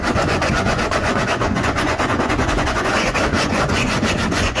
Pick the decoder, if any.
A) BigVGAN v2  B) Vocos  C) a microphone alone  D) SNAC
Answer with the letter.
B